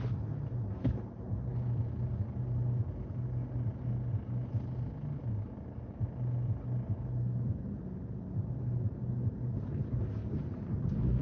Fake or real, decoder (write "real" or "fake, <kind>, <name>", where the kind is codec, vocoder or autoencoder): real